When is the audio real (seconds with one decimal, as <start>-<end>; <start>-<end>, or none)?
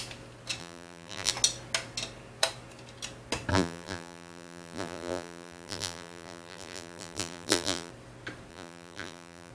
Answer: 0.0-0.6; 1.3-3.5; 7.9-8.5